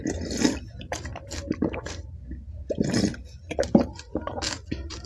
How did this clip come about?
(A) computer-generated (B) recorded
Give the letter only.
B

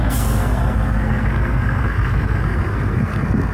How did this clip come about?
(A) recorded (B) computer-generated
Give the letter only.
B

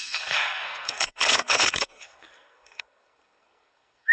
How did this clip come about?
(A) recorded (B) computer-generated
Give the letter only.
B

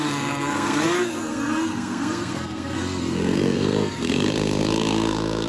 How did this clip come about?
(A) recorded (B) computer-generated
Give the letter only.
B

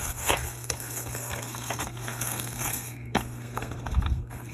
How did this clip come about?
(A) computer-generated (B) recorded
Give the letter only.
A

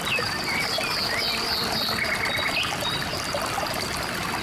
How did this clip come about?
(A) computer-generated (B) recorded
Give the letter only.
B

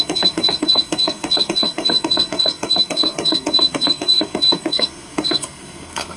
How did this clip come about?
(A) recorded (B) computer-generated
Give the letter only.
B